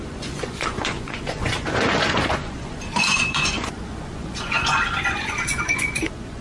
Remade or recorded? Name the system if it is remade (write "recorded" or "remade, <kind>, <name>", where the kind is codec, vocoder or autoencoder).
remade, vocoder, Vocos